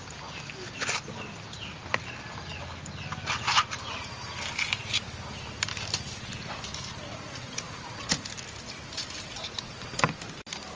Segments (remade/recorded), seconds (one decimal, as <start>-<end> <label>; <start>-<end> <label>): 0.0-7.1 recorded; 7.1-8.3 remade; 8.3-10.8 recorded